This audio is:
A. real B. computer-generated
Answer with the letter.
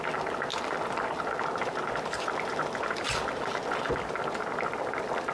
A